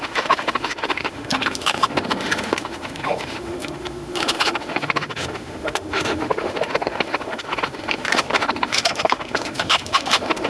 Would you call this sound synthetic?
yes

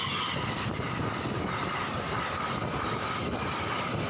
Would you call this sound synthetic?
no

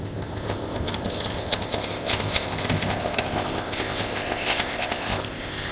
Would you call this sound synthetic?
yes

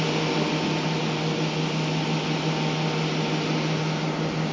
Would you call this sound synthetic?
no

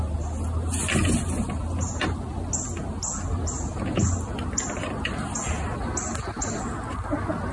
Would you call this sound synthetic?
no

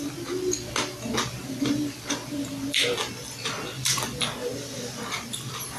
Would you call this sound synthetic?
no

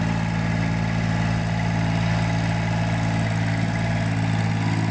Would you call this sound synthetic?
no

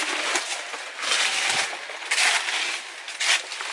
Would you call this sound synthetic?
no